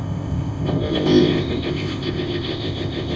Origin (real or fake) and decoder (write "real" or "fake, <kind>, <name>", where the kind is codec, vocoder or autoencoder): fake, codec, ZipCodec